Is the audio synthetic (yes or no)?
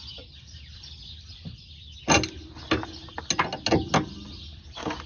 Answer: no